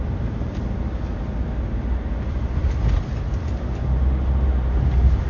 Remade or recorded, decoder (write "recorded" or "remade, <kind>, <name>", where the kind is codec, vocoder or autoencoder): recorded